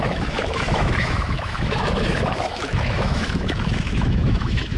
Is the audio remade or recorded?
remade